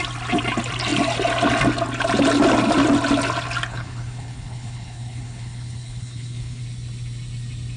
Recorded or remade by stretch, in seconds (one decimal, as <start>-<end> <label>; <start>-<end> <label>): 0.0-3.7 recorded; 3.7-6.6 remade; 6.6-7.8 recorded